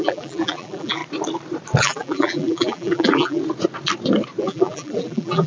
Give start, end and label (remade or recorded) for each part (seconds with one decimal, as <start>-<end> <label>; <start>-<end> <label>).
0.0-1.0 remade; 1.0-1.8 recorded; 1.8-3.4 remade; 3.4-4.4 recorded; 4.4-5.5 remade